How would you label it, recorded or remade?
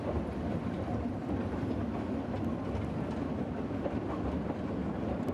recorded